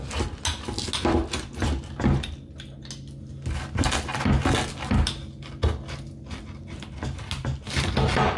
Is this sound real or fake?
real